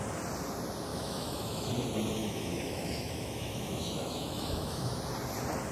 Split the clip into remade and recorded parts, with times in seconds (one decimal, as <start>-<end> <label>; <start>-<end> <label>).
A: 0.0-0.9 recorded; 0.9-1.7 remade; 1.7-2.2 recorded; 2.2-5.0 remade; 5.0-5.7 recorded